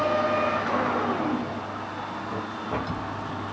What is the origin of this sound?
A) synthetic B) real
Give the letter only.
B